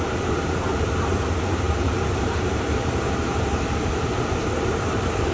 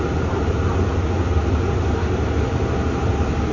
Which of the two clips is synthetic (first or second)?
first